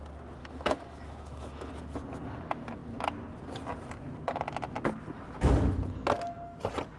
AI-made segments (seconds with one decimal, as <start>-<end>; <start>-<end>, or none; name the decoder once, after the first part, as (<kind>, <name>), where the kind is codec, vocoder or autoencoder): 0.4-1.7 (autoencoder, DAC-VAE)